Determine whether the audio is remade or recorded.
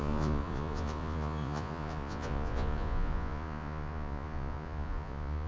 remade